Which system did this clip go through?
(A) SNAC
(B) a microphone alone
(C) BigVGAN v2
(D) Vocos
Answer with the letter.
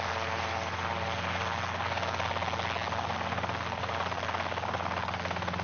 B